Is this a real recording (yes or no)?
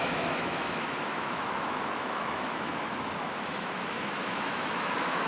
no